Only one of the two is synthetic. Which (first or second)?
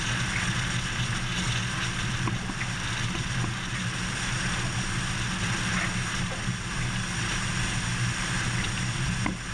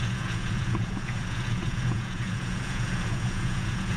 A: second